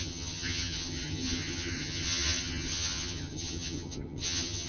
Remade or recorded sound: remade